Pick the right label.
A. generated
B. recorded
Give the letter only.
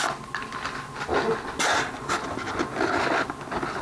B